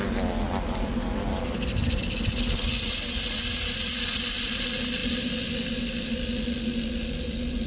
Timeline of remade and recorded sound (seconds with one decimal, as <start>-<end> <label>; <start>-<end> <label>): 0.0-7.7 recorded